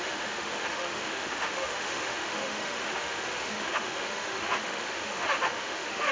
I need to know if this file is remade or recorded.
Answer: remade